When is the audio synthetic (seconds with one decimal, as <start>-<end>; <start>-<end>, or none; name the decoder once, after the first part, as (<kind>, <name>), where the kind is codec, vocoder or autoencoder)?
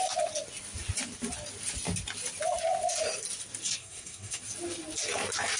3.8-4.4 (codec, SNAC)